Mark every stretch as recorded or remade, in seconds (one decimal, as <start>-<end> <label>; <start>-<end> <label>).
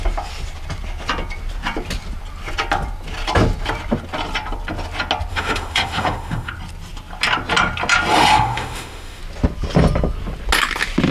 0.0-5.3 recorded; 5.3-6.5 remade; 6.5-8.1 recorded; 8.1-9.2 remade; 9.2-11.1 recorded